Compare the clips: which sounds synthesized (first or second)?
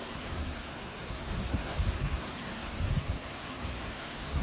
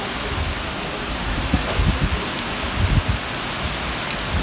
first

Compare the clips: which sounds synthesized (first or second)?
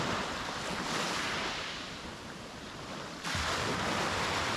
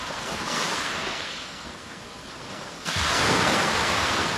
second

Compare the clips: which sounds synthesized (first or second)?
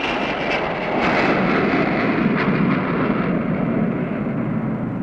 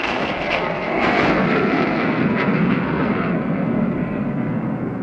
second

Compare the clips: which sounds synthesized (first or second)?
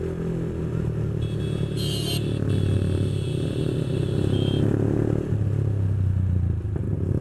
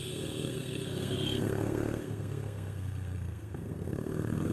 second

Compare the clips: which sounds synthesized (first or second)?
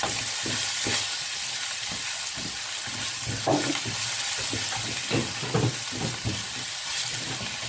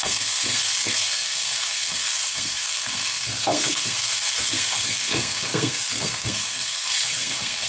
second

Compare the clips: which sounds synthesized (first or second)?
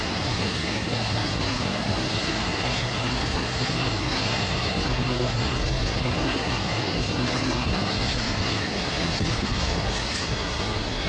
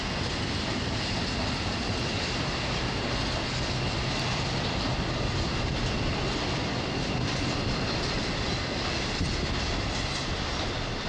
first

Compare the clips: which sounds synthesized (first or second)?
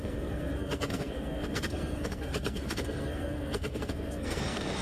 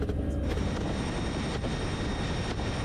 first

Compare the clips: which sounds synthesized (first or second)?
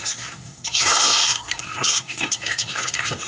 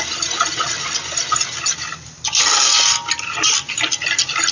first